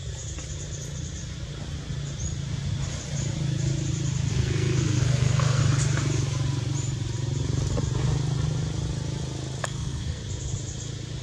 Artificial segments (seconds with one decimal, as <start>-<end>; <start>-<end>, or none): 4.3-5.6; 9.6-10.2